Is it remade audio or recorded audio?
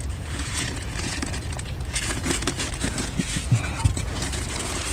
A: remade